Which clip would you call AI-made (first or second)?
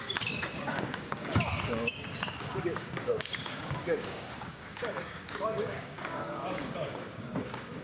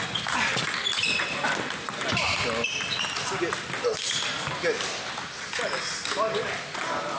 first